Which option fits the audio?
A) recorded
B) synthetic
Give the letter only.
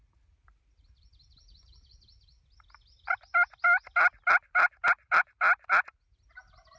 A